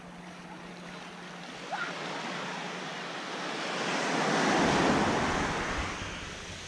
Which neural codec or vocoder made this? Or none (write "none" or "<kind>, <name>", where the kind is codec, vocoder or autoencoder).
none